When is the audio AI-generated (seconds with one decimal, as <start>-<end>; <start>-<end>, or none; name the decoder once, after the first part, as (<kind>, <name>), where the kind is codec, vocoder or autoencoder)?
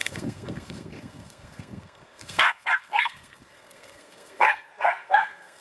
0.0-5.6 (codec, SNAC)